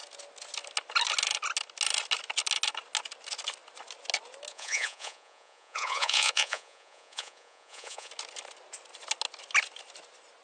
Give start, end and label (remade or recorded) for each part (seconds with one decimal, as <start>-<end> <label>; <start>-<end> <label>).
0.0-4.5 recorded; 4.5-8.1 remade; 8.1-10.4 recorded